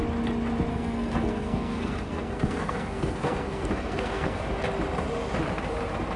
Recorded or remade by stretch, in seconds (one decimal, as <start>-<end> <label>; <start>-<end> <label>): 0.0-0.7 recorded; 0.7-4.4 remade; 4.4-6.2 recorded